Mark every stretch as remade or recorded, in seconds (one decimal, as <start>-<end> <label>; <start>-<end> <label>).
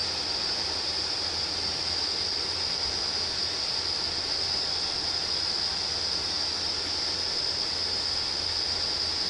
0.0-1.4 remade; 1.4-9.3 recorded